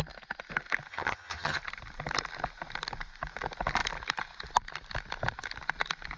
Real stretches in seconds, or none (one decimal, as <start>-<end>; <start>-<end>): 0.0-0.9; 1.6-6.2